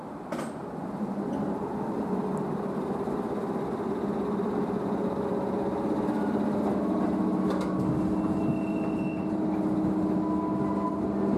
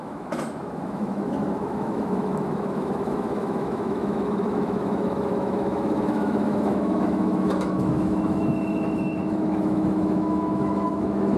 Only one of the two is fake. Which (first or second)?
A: second